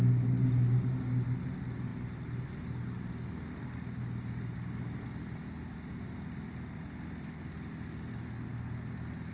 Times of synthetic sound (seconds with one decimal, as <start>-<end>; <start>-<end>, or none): none